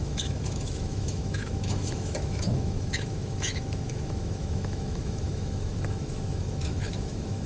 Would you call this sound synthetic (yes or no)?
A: yes